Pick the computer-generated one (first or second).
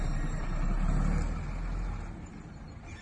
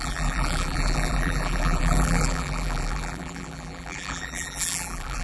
second